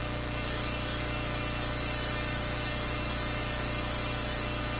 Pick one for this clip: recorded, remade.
remade